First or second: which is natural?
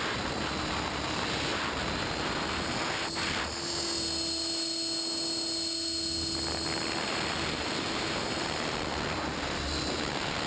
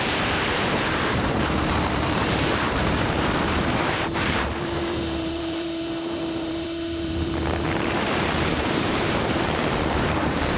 first